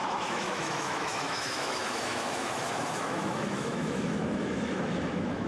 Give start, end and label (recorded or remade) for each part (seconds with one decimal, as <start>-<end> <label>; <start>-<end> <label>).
0.0-5.5 remade

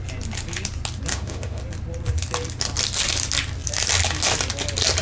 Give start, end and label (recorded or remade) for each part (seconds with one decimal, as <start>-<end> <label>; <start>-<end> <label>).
0.0-1.1 recorded; 1.1-1.6 remade; 1.6-5.0 recorded

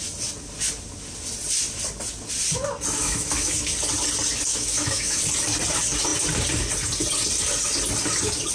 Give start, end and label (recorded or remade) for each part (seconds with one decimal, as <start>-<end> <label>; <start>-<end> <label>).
0.0-3.0 recorded; 3.0-3.7 remade; 3.7-4.5 recorded; 4.5-5.2 remade; 5.2-8.5 recorded

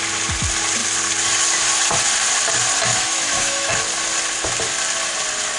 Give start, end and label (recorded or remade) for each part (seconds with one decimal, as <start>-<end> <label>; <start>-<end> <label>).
0.0-2.9 recorded; 2.9-3.7 remade; 3.7-5.6 recorded

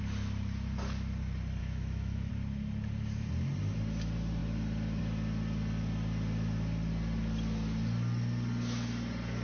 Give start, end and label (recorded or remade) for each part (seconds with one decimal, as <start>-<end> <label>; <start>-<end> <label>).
0.0-1.6 recorded; 1.6-2.3 remade; 2.3-9.4 recorded

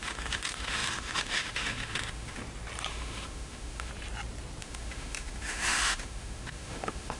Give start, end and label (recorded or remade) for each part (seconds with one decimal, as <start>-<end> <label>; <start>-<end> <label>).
0.0-2.4 remade; 2.4-2.9 recorded; 2.9-3.9 remade; 3.9-4.6 recorded; 4.6-7.2 remade